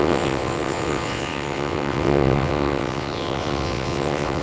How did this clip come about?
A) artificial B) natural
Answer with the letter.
A